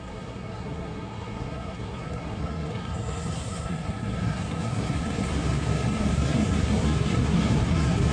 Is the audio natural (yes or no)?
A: no